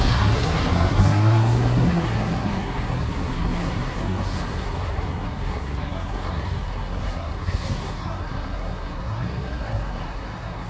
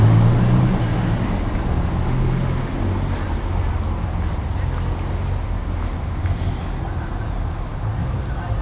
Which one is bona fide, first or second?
second